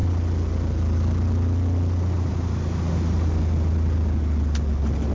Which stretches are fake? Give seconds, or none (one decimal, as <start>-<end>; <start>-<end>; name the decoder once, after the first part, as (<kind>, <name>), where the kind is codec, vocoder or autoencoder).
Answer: none